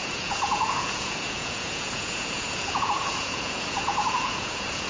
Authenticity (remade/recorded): remade